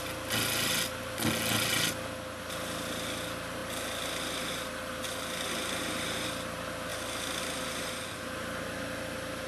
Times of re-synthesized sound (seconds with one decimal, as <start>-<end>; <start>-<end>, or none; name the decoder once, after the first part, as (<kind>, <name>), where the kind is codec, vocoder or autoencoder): none